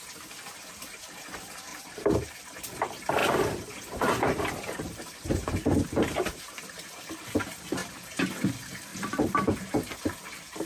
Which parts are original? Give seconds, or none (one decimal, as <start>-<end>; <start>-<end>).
0.0-1.7; 2.4-3.2; 6.5-7.8; 8.3-8.9